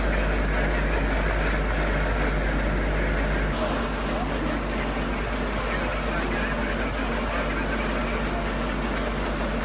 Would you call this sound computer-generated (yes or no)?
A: no